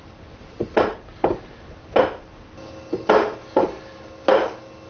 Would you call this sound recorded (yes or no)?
yes